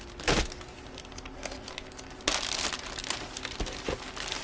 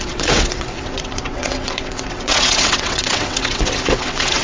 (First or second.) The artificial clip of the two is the second